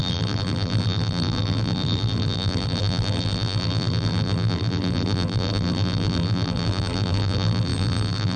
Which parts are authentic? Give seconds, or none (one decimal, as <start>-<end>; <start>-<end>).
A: none